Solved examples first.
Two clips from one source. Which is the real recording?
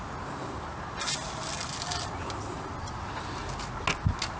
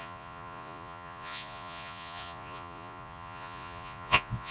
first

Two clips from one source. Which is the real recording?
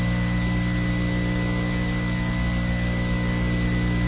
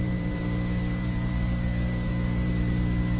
first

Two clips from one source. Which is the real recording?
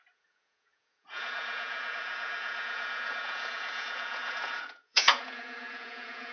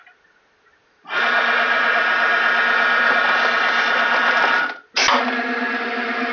second